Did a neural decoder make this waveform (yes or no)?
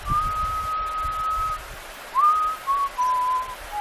no